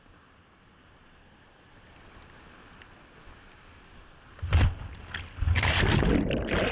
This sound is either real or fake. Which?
real